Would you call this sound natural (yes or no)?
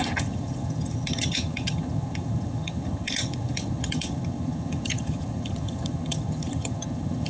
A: no